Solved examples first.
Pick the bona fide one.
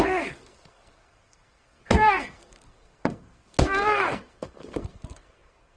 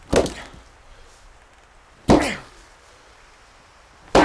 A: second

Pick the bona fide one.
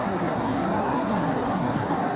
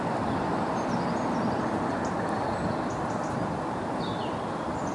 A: second